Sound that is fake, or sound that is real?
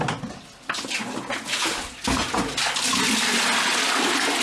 real